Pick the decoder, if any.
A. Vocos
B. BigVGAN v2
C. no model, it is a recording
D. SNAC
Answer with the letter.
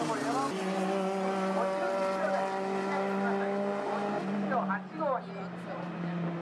C